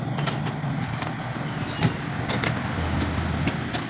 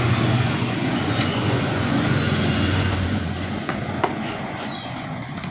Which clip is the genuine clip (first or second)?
first